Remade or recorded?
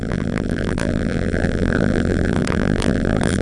remade